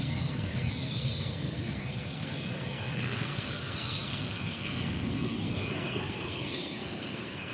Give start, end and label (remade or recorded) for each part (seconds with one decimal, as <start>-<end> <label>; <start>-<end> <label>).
0.0-7.5 remade